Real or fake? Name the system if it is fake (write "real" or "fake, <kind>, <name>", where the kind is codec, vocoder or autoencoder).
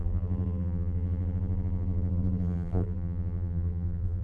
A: fake, vocoder, BigVGAN v2